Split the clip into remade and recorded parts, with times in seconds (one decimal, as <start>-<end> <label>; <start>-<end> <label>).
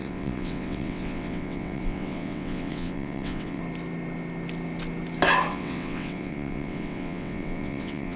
0.0-3.6 remade; 3.6-5.5 recorded; 5.5-8.2 remade